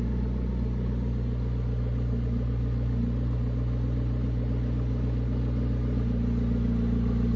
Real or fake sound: real